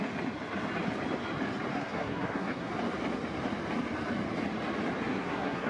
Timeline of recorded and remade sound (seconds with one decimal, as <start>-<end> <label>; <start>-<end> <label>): 0.0-1.7 recorded; 1.7-2.7 remade; 2.7-5.0 recorded; 5.0-5.7 remade

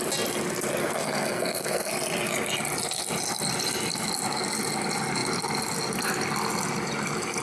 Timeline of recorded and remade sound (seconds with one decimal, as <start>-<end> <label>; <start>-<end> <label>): 0.0-0.8 recorded; 0.8-1.9 remade; 1.9-7.4 recorded

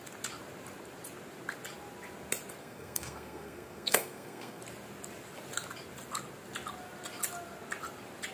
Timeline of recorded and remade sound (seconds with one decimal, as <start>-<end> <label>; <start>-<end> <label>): 0.0-2.6 recorded; 2.6-4.6 remade; 4.6-8.3 recorded

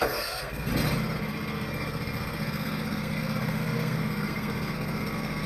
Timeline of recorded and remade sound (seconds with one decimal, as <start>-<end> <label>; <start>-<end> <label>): 0.0-0.7 remade; 0.7-1.3 recorded; 1.3-5.5 remade

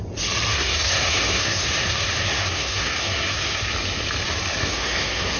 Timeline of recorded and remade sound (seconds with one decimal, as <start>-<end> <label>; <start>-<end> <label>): 0.0-0.5 recorded; 0.5-3.7 remade; 3.7-4.6 recorded; 4.6-5.4 remade

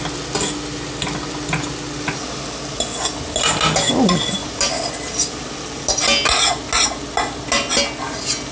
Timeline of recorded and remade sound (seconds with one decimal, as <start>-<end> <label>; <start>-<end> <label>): 0.0-8.5 recorded